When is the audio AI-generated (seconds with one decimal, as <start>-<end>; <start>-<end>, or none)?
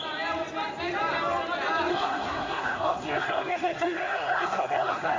1.9-5.2